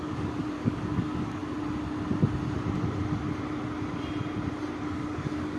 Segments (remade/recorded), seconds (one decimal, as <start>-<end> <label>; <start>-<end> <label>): 0.0-1.4 remade; 1.4-4.8 recorded; 4.8-5.6 remade